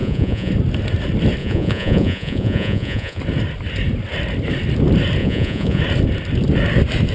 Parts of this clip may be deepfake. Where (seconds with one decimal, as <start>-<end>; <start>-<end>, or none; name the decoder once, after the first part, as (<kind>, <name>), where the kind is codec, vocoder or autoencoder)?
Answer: 0.0-0.5 (vocoder, Vocos); 1.4-3.2; 5.2-5.8